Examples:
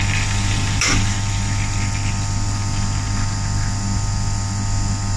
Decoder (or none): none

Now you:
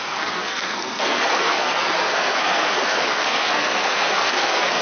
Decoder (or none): codec, SNAC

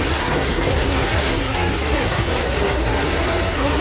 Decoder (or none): codec, SNAC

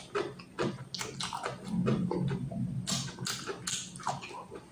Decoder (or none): none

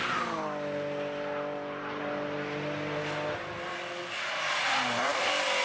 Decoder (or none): none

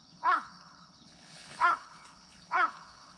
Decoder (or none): codec, HILCodec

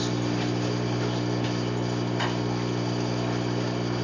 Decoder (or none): none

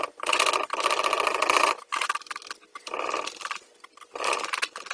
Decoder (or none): none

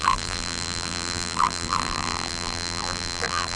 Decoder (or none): vocoder, BigVGAN v2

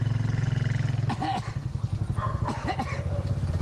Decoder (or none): none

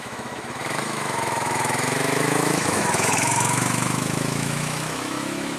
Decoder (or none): autoencoder, DAC-VAE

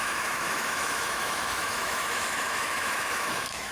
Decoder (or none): autoencoder, DAC-VAE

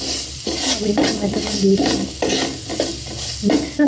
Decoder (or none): none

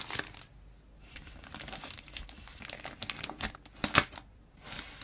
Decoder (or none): none